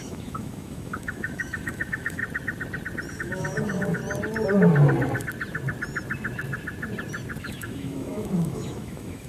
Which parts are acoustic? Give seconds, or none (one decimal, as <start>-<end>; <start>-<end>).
2.2-3.1; 4.0-7.4